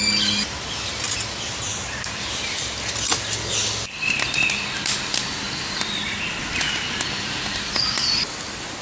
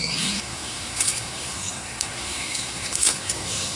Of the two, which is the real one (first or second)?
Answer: first